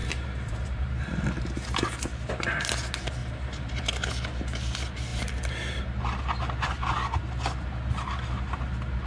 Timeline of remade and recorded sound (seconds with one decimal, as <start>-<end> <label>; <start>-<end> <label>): 0.0-1.3 remade; 1.3-3.2 recorded; 3.2-4.1 remade; 4.1-9.1 recorded